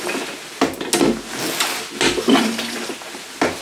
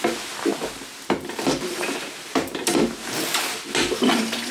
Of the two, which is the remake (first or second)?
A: second